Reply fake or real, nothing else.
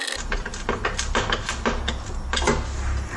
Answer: real